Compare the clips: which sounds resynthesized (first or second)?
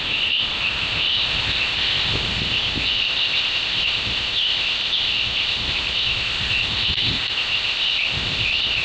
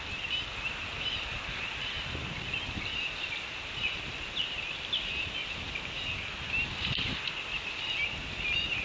first